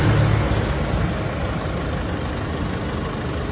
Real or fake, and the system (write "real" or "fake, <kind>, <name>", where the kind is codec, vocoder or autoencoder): real